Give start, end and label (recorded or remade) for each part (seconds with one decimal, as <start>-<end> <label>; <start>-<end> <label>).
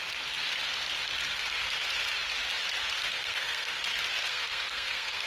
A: 0.0-3.2 recorded; 3.2-3.7 remade; 3.7-4.2 recorded; 4.2-5.3 remade